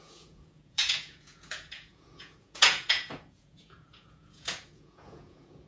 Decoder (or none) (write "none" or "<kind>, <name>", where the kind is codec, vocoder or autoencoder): vocoder, Vocos